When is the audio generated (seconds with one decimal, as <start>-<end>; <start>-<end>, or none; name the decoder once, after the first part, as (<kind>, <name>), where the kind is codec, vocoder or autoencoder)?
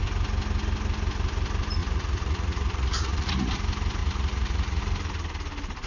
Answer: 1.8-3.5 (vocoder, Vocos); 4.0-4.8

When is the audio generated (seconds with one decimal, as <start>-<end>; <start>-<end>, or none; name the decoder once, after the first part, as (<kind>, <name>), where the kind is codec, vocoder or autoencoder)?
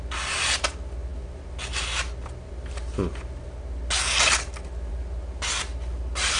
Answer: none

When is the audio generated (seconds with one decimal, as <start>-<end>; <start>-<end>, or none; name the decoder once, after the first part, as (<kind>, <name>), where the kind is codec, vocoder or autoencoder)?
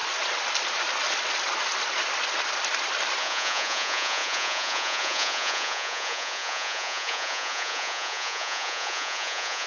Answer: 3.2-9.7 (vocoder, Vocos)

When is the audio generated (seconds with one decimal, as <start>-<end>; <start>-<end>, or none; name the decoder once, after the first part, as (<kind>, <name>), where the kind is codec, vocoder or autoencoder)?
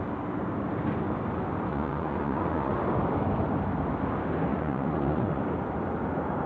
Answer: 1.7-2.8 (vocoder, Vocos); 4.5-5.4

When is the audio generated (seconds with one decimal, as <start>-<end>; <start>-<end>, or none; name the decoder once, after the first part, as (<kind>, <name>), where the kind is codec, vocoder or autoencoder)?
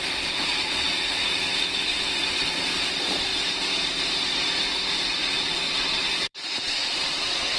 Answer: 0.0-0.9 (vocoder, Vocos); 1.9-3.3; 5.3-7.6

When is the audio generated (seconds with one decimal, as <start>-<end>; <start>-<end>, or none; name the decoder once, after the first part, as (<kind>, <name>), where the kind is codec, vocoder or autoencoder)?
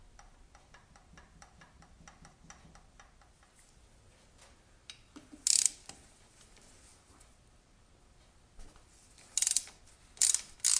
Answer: none